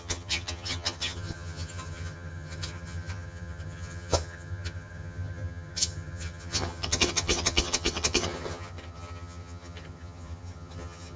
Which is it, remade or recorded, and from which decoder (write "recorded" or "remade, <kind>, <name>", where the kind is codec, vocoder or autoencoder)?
remade, vocoder, HiFi-GAN